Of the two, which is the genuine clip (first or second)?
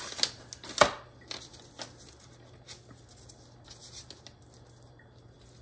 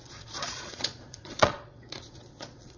first